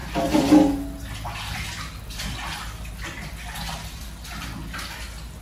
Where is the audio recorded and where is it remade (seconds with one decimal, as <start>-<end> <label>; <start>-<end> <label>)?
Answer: 0.0-5.4 recorded